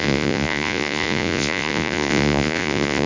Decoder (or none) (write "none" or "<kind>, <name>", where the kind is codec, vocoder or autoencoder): vocoder, Vocos